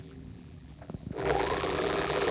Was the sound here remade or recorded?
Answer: remade